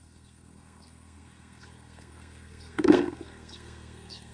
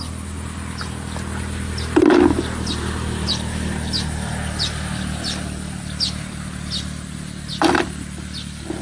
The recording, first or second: second